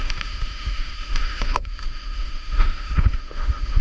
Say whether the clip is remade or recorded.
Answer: remade